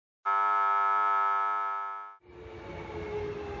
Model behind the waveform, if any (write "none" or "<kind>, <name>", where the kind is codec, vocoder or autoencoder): none